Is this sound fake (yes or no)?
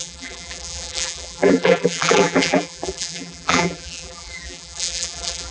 yes